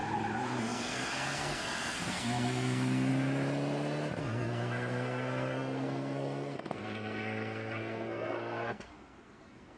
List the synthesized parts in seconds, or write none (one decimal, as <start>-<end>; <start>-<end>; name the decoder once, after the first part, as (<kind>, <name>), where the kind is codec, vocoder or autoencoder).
0.6-3.1 (codec, SNAC); 4.2-9.8